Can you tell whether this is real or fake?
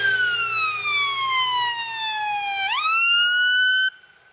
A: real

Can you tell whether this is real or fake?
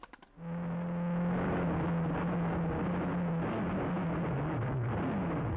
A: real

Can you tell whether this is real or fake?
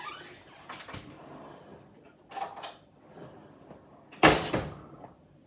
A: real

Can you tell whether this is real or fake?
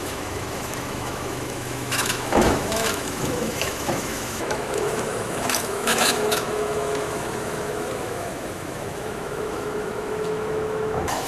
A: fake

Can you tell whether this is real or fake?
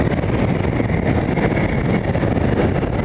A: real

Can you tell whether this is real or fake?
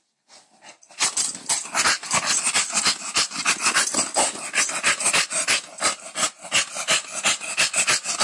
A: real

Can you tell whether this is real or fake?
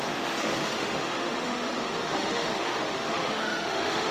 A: fake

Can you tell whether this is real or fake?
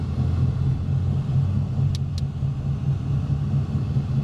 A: real